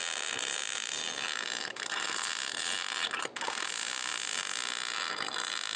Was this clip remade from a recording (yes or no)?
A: no